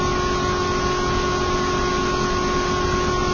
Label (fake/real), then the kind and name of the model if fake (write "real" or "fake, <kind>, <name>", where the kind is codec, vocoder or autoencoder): real